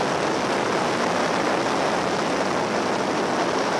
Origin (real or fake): real